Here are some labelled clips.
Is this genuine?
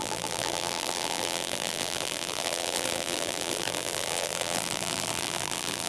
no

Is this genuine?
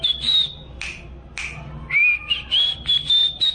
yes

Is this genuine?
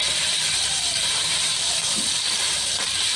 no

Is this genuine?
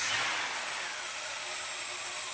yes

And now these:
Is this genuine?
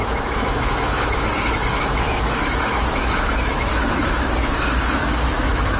no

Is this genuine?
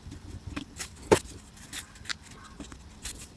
yes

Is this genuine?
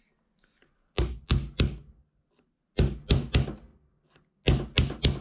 yes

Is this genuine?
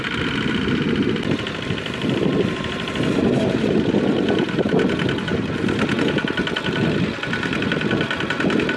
yes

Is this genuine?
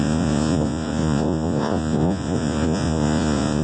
no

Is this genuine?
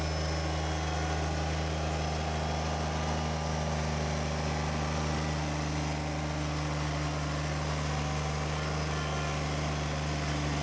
yes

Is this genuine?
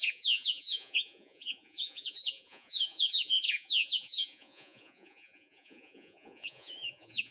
no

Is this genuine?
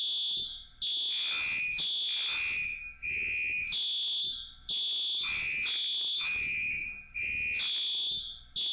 yes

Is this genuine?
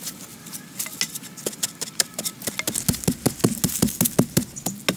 yes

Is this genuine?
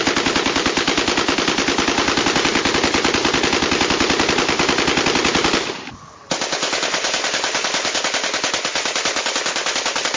yes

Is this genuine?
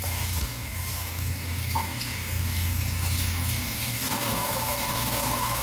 no